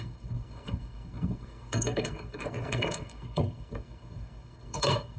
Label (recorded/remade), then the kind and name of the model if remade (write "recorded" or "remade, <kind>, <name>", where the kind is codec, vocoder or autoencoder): remade, codec, SNAC